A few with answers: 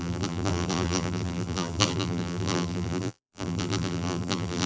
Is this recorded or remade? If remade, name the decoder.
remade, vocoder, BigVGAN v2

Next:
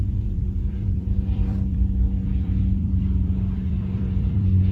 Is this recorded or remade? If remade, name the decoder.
remade, vocoder, BigVGAN v2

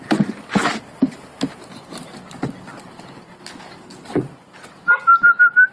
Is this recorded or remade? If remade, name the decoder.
recorded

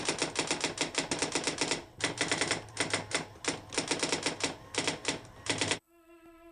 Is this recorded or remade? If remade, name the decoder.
recorded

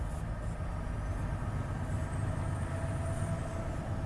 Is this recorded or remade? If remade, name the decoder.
recorded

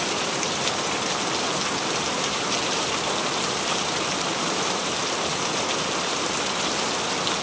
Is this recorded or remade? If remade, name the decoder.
remade, vocoder, BigVGAN v2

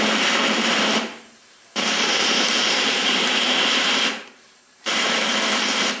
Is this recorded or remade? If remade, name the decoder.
remade, vocoder, BigVGAN v2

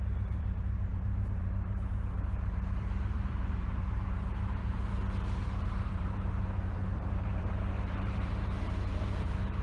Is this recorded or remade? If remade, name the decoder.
remade, vocoder, BigVGAN v2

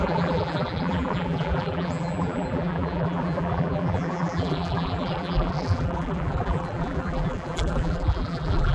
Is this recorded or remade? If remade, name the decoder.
remade, vocoder, BigVGAN v2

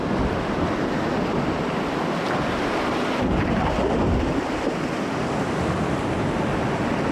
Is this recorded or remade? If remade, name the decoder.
recorded